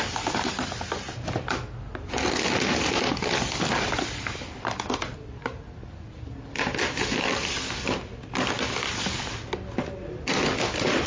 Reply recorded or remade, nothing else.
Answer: recorded